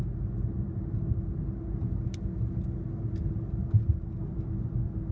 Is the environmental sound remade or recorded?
recorded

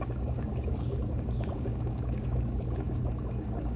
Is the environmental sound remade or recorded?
remade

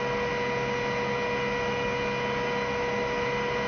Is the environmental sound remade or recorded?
recorded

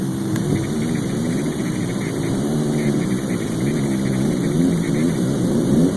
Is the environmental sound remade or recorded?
recorded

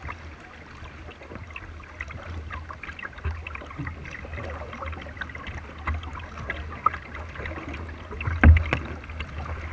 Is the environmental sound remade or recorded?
recorded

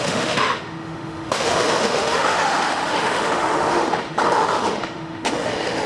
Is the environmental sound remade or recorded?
remade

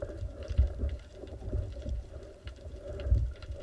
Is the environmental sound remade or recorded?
remade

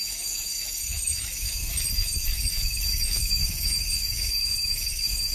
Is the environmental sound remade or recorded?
remade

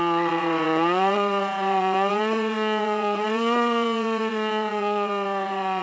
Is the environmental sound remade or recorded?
remade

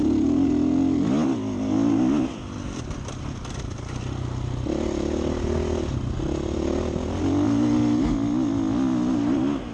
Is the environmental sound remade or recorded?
recorded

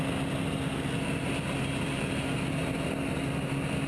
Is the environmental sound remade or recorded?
recorded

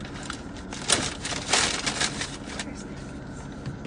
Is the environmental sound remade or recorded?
recorded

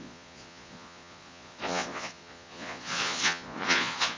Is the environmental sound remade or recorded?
remade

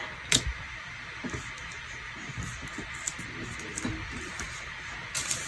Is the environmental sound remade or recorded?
recorded